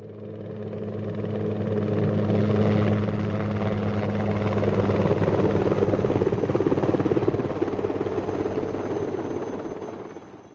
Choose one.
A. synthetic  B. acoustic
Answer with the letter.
B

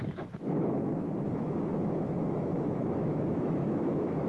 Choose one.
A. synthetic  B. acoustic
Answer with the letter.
A